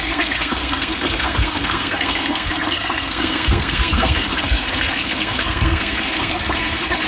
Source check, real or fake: fake